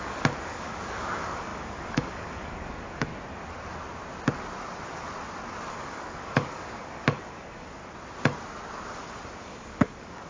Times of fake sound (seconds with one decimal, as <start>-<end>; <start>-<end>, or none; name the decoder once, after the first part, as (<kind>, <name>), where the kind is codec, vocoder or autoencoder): 0.0-3.1 (codec, DAC); 5.7-7.8; 9.4-10.3